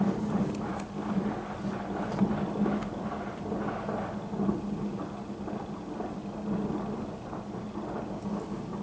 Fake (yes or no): no